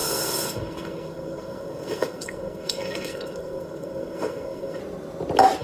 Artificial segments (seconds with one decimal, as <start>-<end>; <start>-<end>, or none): 0.0-4.8